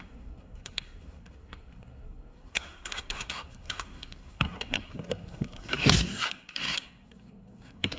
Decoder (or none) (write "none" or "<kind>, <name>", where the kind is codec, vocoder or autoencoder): codec, SNAC